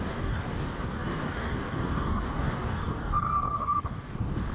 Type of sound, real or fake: fake